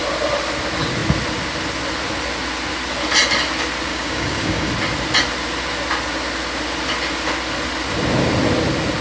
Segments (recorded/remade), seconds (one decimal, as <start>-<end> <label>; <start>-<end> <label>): 0.0-3.9 recorded; 3.9-4.7 remade; 4.7-9.0 recorded